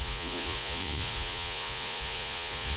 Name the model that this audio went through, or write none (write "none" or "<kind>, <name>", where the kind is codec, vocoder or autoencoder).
vocoder, Vocos